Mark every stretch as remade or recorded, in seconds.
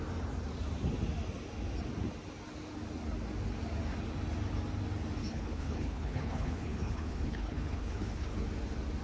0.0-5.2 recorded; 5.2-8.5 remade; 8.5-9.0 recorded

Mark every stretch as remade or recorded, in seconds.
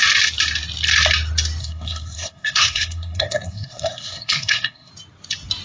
0.0-1.6 recorded; 1.6-4.9 remade; 4.9-5.6 recorded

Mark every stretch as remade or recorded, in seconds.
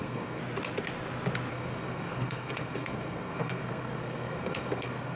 0.0-0.4 remade; 0.4-1.5 recorded; 1.5-5.2 remade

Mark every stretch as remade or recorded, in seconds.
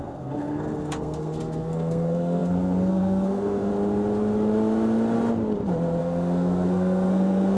0.0-3.7 remade; 3.7-6.0 recorded; 6.0-7.6 remade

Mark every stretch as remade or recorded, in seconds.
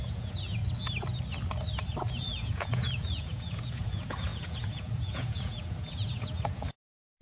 0.0-0.6 remade; 0.6-2.1 recorded; 2.1-7.2 remade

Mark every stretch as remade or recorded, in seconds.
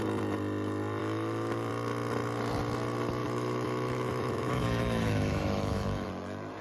0.0-1.0 recorded; 1.0-1.7 remade; 1.7-3.2 recorded; 3.2-6.1 remade; 6.1-6.6 recorded